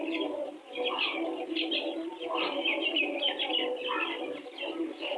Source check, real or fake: real